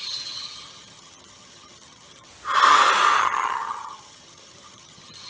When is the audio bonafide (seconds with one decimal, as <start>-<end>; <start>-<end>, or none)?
2.3-3.2

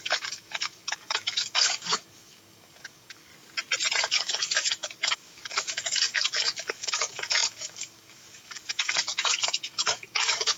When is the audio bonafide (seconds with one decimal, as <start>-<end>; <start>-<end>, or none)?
3.3-4.0

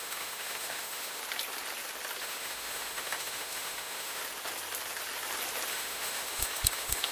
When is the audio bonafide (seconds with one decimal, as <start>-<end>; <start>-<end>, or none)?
1.2-2.2; 4.2-5.7

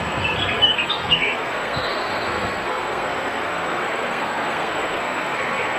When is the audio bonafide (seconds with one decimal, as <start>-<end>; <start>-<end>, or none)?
none

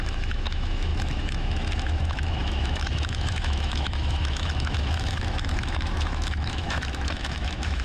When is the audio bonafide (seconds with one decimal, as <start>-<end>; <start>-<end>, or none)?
none

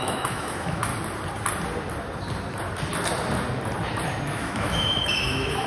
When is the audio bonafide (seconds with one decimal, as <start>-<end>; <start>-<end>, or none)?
0.9-4.3

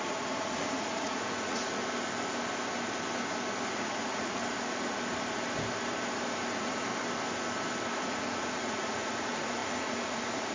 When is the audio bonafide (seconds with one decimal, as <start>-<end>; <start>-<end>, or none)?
1.8-3.7; 4.4-6.5; 6.9-7.9

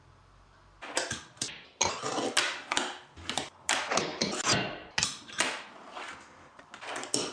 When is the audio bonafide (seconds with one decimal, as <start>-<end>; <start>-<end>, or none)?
0.0-7.3